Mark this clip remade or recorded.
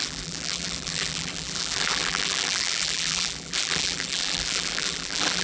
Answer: remade